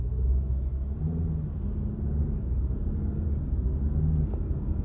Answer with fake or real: real